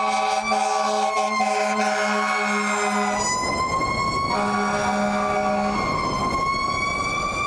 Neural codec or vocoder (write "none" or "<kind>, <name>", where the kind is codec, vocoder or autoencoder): none